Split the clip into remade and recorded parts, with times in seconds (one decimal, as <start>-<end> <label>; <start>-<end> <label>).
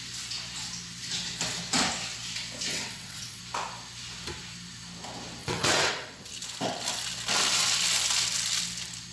0.0-2.7 recorded; 2.7-3.4 remade; 3.4-5.4 recorded; 5.4-6.3 remade; 6.3-9.1 recorded